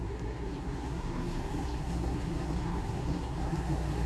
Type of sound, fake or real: fake